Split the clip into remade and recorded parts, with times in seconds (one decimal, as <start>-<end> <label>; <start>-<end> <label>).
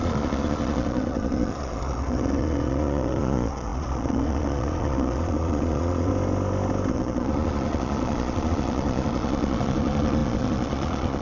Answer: 0.0-6.1 remade; 6.1-6.9 recorded; 6.9-11.2 remade